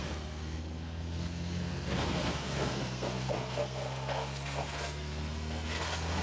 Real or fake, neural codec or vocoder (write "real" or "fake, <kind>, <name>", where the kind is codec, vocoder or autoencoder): fake, codec, SNAC